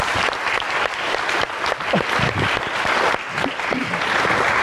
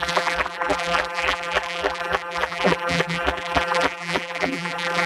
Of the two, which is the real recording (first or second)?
first